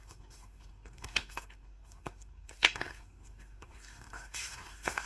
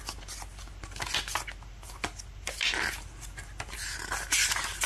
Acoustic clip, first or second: second